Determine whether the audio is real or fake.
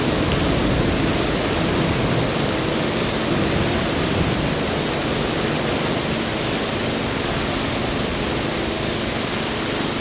real